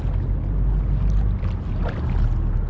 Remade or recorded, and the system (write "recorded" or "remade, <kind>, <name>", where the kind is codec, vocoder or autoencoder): recorded